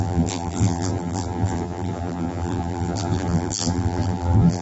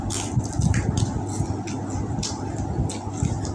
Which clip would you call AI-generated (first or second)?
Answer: first